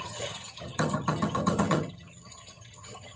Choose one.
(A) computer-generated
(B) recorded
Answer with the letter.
A